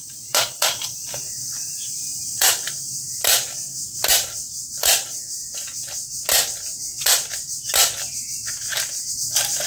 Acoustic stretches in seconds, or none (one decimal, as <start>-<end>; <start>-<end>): 5.4-9.1